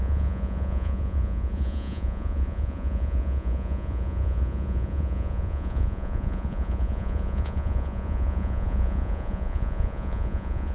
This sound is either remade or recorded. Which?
remade